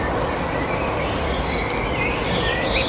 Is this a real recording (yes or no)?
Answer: yes